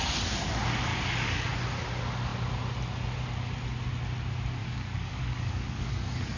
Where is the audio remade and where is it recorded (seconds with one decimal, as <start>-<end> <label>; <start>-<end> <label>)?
0.0-0.9 recorded; 0.9-1.5 remade; 1.5-4.6 recorded; 4.6-5.9 remade; 5.9-6.4 recorded